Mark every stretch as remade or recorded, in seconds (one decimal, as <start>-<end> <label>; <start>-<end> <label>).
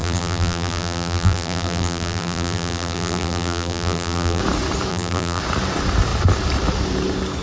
0.0-4.4 remade; 4.4-4.9 recorded; 4.9-5.4 remade; 5.4-7.4 recorded